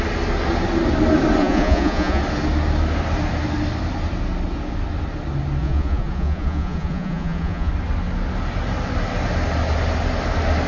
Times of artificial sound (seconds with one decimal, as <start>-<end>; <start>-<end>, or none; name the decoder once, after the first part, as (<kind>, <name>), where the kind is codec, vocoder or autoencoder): 1.4-2.2 (vocoder, Vocos); 5.6-7.7